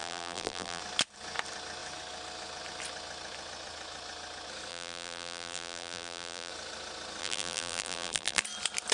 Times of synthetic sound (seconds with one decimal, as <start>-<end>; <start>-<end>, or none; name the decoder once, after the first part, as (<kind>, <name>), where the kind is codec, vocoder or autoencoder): 0.0-0.8 (vocoder, BigVGAN v2); 4.7-6.5; 7.2-8.4